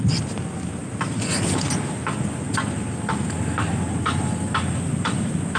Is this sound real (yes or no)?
yes